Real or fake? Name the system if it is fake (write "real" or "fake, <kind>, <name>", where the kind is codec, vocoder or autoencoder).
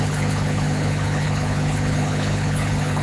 fake, codec, HILCodec